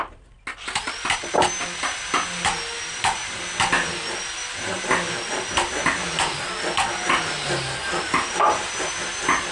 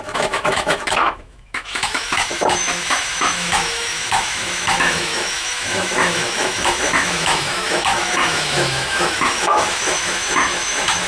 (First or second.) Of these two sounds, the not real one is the second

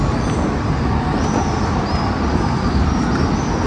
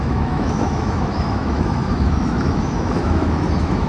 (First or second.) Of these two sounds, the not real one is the second